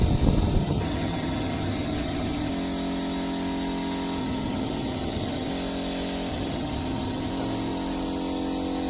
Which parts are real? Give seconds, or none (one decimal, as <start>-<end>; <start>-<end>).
0.0-0.6; 2.5-4.2; 5.5-6.3; 7.3-8.9